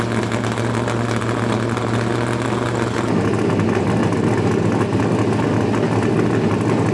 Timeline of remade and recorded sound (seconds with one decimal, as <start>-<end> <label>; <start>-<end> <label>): 0.0-6.9 recorded